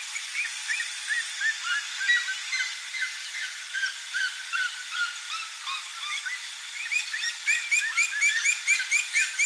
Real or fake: real